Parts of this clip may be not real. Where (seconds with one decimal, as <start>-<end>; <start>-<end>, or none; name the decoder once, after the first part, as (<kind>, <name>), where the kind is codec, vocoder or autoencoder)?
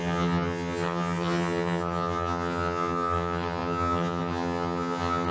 0.0-5.3 (vocoder, HiFi-GAN)